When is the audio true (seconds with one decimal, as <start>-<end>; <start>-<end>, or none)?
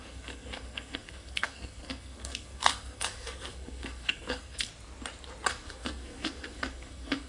4.7-5.5